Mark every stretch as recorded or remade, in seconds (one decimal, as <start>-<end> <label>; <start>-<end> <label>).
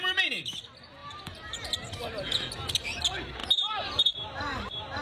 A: 0.0-1.0 recorded; 1.0-1.7 remade; 1.7-3.4 recorded; 3.4-4.1 remade; 4.1-5.0 recorded